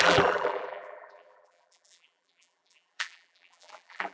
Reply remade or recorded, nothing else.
remade